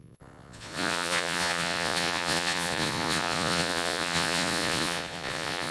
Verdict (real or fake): fake